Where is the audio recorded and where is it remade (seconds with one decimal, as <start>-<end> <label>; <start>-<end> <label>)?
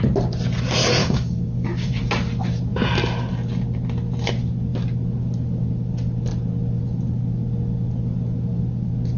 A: 0.0-1.0 recorded; 1.0-2.0 remade; 2.0-9.2 recorded